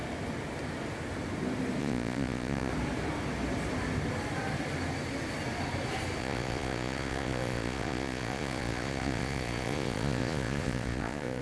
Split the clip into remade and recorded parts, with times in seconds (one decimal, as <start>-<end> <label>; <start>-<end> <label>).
0.0-1.8 recorded; 1.8-2.7 remade; 2.7-6.2 recorded; 6.2-11.4 remade